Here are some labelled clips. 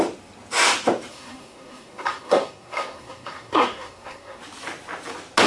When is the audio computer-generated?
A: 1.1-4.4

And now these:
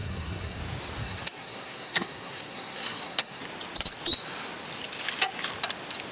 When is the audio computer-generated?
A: 0.0-0.6; 1.0-3.4

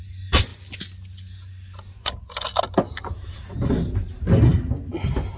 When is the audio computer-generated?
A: none

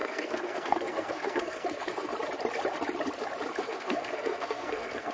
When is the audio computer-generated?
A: 0.0-2.1; 3.6-5.1

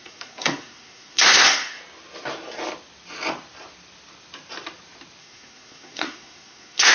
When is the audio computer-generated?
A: 0.0-1.8; 5.2-6.9